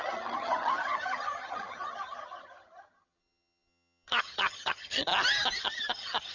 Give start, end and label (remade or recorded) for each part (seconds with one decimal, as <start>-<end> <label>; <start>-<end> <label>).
0.0-5.1 remade; 5.1-5.6 recorded; 5.6-6.3 remade